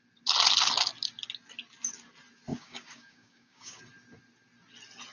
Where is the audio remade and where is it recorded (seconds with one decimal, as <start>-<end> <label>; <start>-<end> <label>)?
0.0-2.5 recorded; 2.5-3.8 remade; 3.8-5.1 recorded